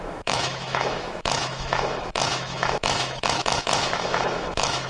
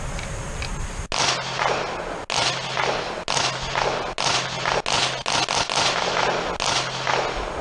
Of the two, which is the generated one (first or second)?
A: first